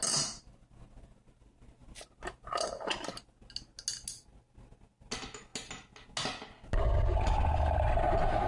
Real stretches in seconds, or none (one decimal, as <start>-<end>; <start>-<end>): 0.0-8.5